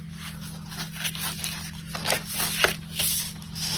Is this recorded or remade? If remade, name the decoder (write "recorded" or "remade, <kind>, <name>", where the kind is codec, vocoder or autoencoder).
recorded